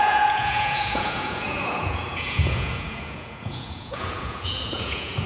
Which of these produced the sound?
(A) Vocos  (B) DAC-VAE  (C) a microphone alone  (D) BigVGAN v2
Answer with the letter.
A